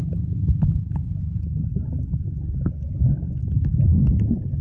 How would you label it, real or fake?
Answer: real